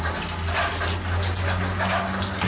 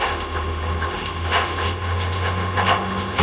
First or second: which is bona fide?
first